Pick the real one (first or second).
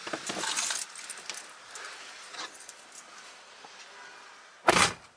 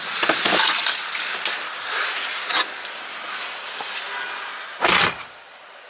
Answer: second